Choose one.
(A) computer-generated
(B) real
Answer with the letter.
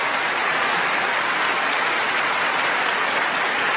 A